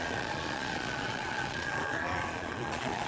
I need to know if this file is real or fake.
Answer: fake